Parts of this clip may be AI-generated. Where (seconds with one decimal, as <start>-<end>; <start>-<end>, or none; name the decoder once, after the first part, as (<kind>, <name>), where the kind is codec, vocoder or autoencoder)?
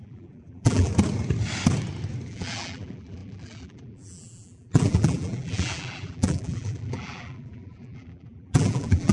0.0-0.9 (vocoder, BigVGAN v2); 2.3-9.1